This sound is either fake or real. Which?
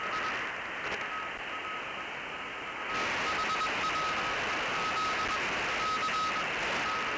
real